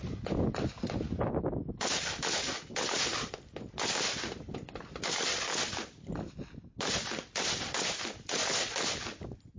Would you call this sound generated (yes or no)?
no